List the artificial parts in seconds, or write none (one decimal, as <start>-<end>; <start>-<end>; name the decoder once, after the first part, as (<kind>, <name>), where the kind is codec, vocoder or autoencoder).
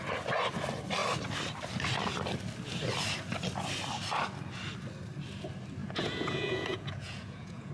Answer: 5.8-7.7 (vocoder, Vocos)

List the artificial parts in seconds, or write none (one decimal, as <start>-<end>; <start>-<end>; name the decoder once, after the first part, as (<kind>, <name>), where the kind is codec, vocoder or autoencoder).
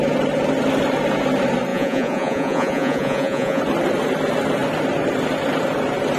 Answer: 1.7-3.6 (vocoder, Vocos)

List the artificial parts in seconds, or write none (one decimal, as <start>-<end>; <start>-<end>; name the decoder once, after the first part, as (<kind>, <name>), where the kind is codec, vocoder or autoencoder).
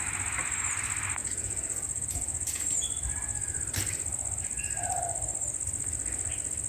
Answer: 1.2-2.7 (vocoder, Vocos)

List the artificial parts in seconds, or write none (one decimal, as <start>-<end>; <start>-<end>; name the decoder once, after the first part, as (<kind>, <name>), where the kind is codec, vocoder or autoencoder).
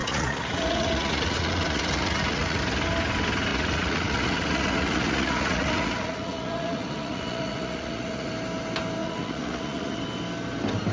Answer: 0.0-2.6 (vocoder, Vocos); 3.5-8.3; 9.0-10.0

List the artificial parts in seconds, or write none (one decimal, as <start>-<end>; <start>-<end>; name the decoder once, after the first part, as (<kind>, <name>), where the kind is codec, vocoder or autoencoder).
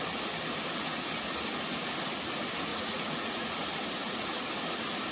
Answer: 2.7-3.5 (vocoder, Vocos); 4.0-4.5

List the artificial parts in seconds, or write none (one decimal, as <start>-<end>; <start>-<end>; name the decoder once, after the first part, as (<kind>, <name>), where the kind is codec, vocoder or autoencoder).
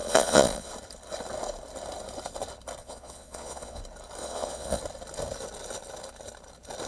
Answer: 0.0-0.7 (vocoder, Vocos); 2.8-3.8; 4.2-4.8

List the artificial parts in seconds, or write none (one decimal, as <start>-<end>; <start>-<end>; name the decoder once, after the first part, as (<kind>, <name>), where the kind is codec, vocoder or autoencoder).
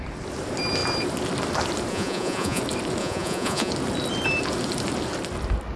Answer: 1.9-2.6 (vocoder, Vocos); 3.0-3.7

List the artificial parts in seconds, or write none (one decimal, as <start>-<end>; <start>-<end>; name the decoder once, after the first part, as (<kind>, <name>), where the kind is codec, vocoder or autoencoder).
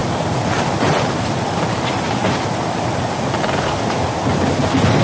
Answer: none